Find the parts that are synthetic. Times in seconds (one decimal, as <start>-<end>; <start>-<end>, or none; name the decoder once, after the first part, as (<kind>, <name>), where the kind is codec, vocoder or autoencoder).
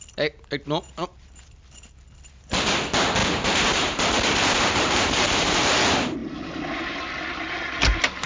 3.2-5.6 (vocoder, BigVGAN v2); 6.2-6.9